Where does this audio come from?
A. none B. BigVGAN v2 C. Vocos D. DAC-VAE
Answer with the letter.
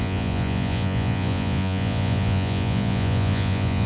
C